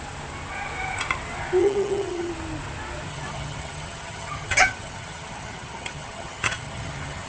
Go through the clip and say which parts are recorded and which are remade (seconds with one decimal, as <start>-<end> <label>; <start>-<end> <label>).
0.0-1.6 recorded; 1.6-2.3 remade; 2.3-3.1 recorded; 3.1-7.3 remade